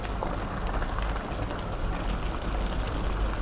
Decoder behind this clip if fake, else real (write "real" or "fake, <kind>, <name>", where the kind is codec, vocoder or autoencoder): real